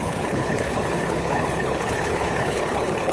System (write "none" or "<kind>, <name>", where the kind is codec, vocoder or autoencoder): codec, HILCodec